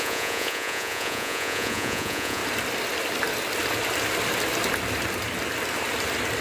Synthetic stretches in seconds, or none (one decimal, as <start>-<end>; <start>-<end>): 0.0-2.4